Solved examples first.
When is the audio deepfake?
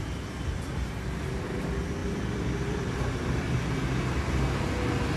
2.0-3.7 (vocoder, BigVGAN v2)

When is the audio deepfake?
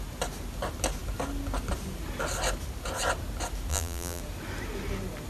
3.7-4.2 (vocoder, BigVGAN v2)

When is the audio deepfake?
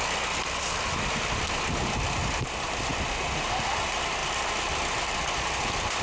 2.2-2.9 (vocoder, BigVGAN v2)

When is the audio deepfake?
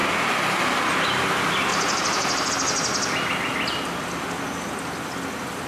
1.7-2.5 (vocoder, BigVGAN v2)